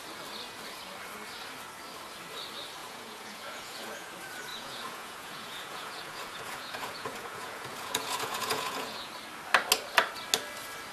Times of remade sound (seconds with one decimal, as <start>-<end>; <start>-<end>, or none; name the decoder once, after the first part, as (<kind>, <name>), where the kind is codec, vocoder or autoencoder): 2.8-4.1 (vocoder, Vocos); 4.5-9.1